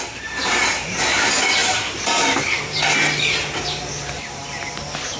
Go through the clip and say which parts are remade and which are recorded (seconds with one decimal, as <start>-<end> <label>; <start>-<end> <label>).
0.0-5.2 recorded